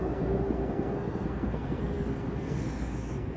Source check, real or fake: fake